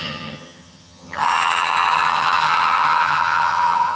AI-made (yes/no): yes